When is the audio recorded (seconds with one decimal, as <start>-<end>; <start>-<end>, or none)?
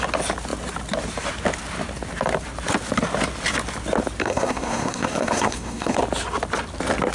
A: 0.0-4.2; 6.0-7.1